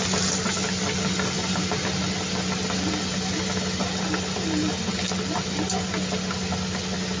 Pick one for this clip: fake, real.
real